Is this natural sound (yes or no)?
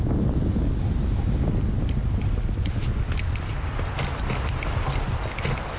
yes